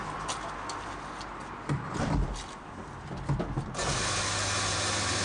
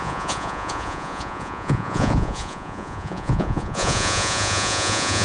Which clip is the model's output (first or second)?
second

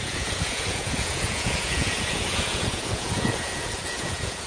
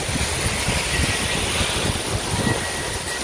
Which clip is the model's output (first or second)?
first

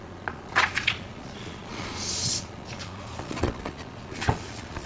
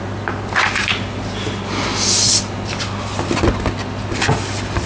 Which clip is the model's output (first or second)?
first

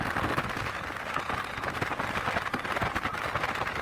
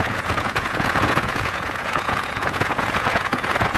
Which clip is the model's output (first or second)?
second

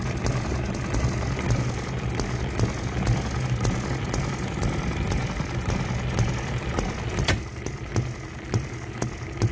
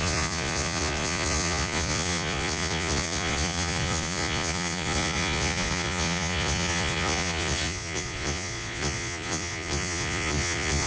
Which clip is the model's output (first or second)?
second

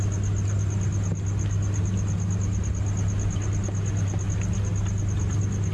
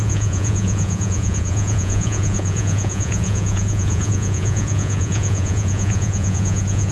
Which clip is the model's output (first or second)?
second